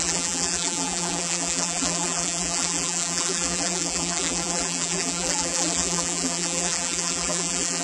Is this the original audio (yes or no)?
no